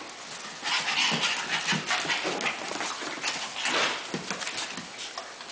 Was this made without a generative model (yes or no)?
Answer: yes